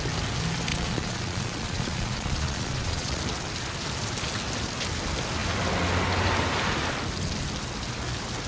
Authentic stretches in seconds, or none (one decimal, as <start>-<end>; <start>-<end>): 0.0-0.7; 3.2-8.5